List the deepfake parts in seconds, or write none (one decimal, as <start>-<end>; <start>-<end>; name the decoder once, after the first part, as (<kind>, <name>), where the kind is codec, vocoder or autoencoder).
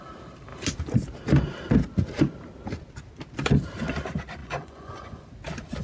4.4-5.3 (vocoder, Vocos)